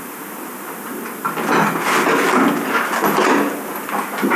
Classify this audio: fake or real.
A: real